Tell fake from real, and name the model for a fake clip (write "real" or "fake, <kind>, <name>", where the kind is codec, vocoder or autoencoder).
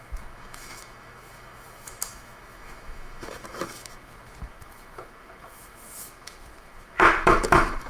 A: fake, autoencoder, DAC-VAE